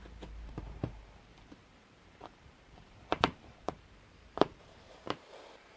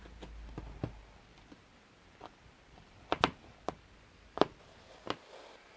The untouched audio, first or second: second